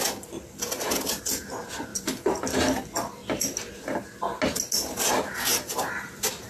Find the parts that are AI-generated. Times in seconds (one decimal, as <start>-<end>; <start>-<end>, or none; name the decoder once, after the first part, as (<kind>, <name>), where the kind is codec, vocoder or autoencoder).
1.9-2.4 (vocoder, BigVGAN v2); 3.2-4.4; 5.5-6.5